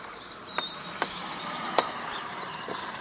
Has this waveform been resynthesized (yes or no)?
yes